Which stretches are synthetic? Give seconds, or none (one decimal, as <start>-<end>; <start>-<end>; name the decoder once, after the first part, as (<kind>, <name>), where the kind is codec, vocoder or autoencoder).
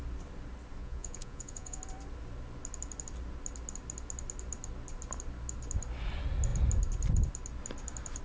0.8-1.8 (vocoder, Vocos)